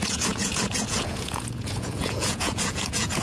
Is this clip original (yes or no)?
no